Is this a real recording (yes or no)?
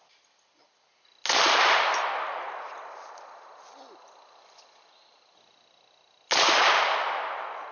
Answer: yes